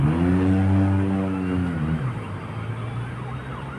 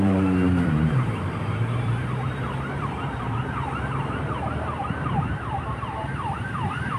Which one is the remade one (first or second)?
second